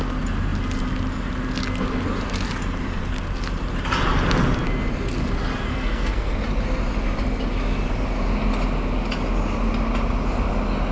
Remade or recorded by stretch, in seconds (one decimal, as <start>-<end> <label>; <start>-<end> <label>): 0.0-5.7 recorded; 5.7-6.3 remade; 6.3-10.9 recorded